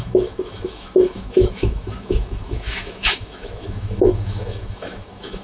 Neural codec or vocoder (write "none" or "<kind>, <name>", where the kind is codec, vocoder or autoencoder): autoencoder, DAC-VAE